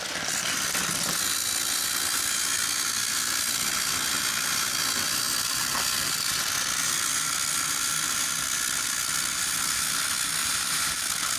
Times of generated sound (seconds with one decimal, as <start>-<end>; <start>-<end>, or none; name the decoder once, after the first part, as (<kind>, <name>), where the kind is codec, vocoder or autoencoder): 10.4-11.0 (vocoder, BigVGAN v2)